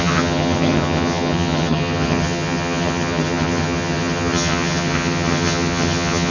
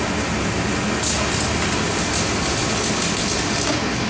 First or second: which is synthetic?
first